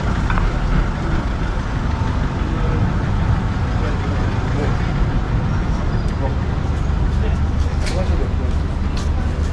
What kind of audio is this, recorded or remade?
recorded